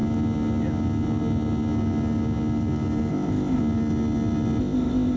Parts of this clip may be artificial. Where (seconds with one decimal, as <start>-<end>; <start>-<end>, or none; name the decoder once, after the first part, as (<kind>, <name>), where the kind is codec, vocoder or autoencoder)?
3.1-3.6 (codec, ZipCodec); 4.6-5.2